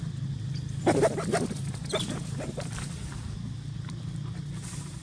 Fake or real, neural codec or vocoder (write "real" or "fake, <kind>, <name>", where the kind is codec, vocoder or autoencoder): real